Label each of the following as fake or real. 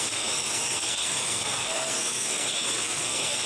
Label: fake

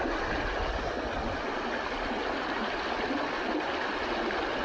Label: real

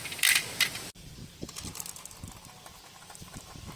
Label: real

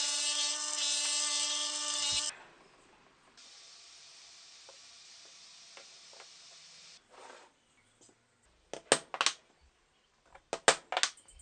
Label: real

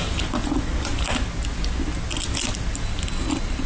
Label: real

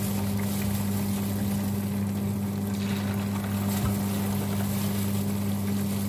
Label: real